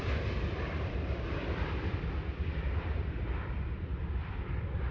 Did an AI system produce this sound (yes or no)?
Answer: yes